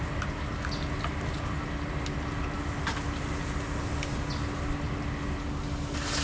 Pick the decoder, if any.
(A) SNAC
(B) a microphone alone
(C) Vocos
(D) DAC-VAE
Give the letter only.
B